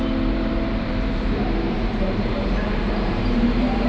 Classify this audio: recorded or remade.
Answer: remade